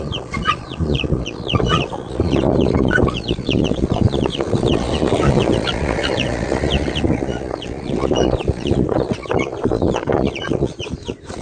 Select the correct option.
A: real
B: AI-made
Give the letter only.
B